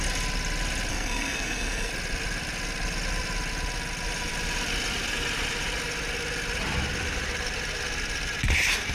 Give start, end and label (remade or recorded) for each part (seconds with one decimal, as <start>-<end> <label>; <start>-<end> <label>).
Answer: 0.0-0.9 recorded; 0.9-1.9 remade; 1.9-8.9 recorded